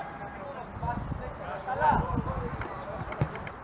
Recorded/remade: recorded